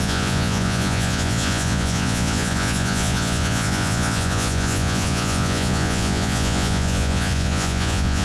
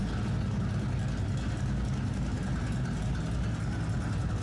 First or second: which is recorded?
second